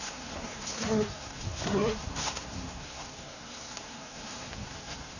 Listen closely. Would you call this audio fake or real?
fake